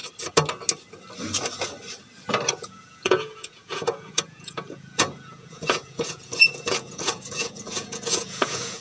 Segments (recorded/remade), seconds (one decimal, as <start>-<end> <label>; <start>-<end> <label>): 0.0-2.5 recorded; 2.5-8.8 remade